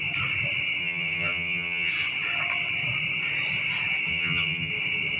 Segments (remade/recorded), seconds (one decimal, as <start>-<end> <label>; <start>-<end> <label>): 0.0-0.8 recorded; 0.8-1.9 remade; 1.9-4.1 recorded; 4.1-4.7 remade; 4.7-5.2 recorded